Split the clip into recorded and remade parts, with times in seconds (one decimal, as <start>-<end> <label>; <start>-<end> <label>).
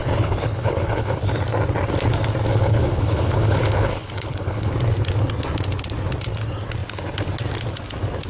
0.0-1.3 remade; 1.3-2.5 recorded; 2.5-4.7 remade; 4.7-8.3 recorded